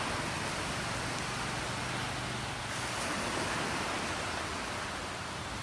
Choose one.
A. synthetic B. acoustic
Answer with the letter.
B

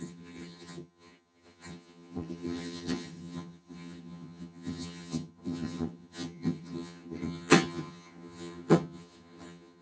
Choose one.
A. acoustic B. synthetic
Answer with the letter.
B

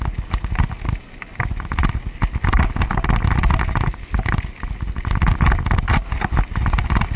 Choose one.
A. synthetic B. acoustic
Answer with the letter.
B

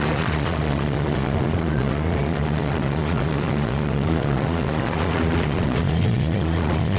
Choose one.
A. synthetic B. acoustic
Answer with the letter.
A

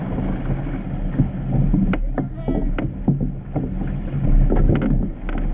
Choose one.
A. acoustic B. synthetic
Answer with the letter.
A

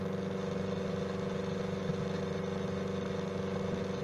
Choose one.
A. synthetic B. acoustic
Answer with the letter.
B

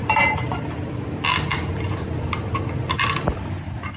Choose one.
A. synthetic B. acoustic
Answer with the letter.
B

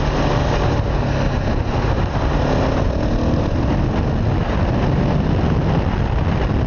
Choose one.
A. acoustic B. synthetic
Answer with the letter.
A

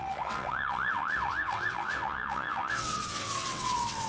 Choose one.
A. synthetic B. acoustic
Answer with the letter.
A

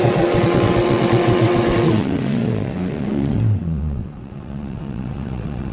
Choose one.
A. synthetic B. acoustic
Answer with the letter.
A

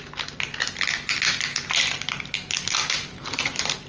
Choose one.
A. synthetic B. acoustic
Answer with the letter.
B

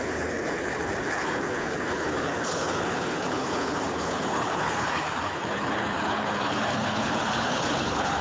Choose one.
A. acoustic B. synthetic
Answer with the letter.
B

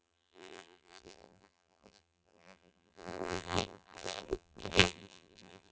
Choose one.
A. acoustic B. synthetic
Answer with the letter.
B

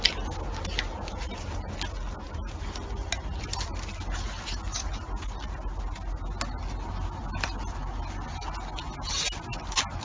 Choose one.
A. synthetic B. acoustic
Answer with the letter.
B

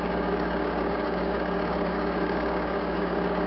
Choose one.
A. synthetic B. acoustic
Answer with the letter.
A